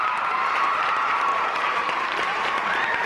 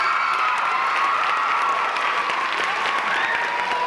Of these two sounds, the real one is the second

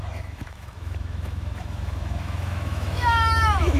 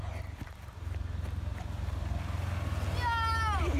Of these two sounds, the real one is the second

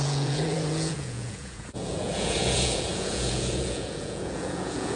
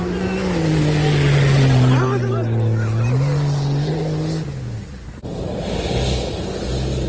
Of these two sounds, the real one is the second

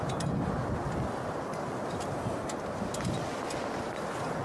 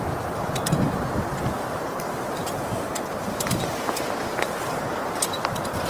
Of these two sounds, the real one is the first